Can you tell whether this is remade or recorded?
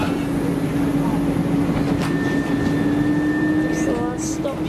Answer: recorded